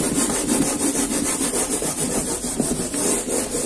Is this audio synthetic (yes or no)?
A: no